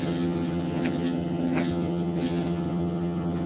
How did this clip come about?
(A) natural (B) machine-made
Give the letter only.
B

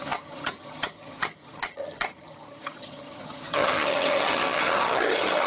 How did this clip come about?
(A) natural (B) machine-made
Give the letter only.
B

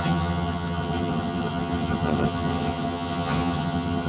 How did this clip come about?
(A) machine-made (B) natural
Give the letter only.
A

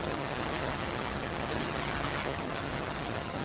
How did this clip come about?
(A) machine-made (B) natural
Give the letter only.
A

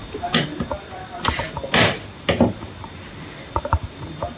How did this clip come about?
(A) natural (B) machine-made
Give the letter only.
A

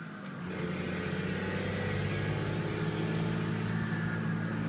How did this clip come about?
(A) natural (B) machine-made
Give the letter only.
A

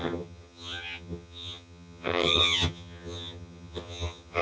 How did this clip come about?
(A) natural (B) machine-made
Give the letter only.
B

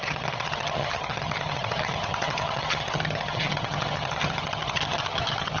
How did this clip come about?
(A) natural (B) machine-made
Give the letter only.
B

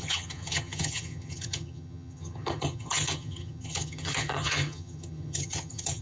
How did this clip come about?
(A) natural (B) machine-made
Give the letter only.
B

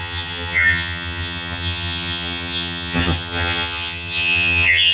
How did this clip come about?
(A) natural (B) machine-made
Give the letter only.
B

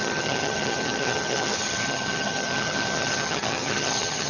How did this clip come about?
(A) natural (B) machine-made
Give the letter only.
B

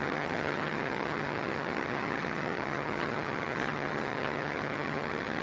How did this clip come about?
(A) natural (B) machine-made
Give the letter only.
B